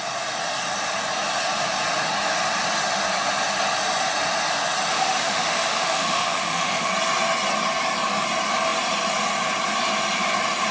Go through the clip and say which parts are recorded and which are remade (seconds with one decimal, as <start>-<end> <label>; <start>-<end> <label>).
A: 0.0-4.9 recorded; 4.9-6.9 remade; 6.9-10.7 recorded